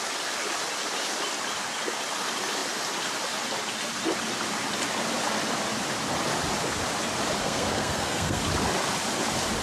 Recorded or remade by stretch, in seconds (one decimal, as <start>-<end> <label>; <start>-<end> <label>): 0.0-7.4 recorded; 7.4-8.4 remade; 8.4-9.6 recorded